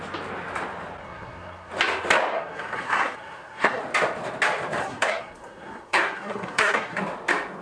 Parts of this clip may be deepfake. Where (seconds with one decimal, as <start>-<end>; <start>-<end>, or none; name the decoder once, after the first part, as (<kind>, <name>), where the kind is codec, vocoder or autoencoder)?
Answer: 1.0-1.7 (codec, SNAC); 2.3-3.8; 4.8-7.0